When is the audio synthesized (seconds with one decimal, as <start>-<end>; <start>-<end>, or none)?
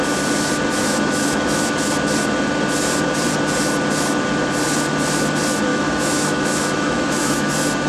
0.8-1.7; 5.7-7.5